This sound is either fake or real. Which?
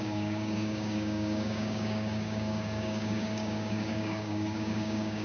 fake